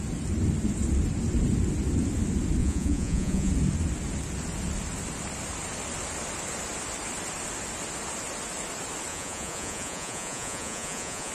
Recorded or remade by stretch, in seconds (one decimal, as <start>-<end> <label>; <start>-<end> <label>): 0.0-2.6 recorded; 2.6-3.5 remade; 3.5-9.1 recorded; 9.1-11.3 remade